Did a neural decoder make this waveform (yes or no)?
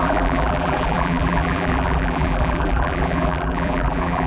yes